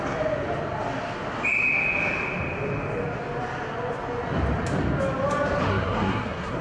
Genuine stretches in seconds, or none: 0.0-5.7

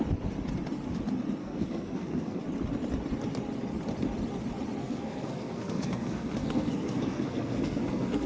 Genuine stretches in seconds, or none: 0.0-1.4; 2.4-4.8